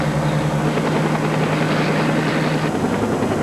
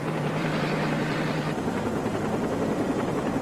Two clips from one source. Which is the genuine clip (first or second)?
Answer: first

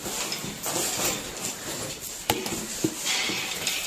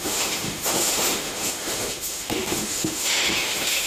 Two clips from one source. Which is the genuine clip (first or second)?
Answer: first